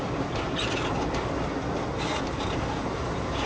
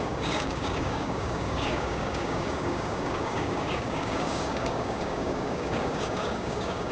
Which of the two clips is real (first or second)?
first